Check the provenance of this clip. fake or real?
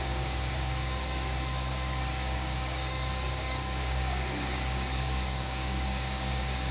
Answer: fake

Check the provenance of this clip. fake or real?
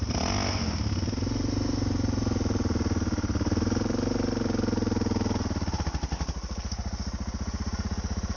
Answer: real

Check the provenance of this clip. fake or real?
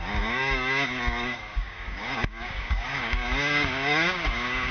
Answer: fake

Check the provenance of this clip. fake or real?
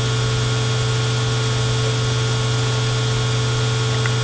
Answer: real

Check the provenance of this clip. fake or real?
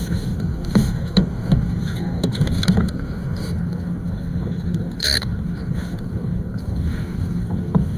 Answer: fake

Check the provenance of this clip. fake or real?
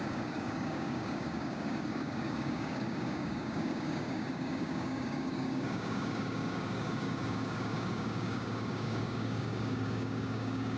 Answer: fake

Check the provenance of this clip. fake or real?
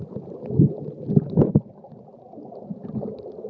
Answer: real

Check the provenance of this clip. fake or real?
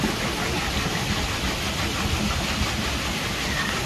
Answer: real